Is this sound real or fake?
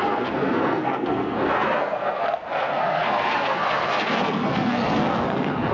fake